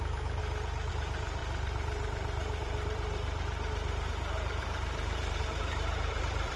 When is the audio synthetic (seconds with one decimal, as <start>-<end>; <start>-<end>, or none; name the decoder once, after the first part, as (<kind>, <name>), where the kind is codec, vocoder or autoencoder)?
0.0-0.4 (vocoder, BigVGAN v2); 0.9-6.6